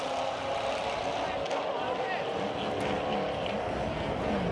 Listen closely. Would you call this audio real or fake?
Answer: real